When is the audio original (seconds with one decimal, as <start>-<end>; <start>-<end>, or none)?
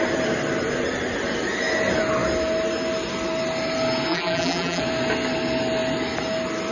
0.0-4.1; 4.8-6.7